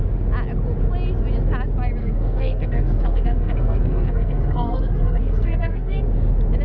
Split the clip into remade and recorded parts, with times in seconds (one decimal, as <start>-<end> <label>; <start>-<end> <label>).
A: 0.0-2.0 recorded; 2.0-6.0 remade; 6.0-6.6 recorded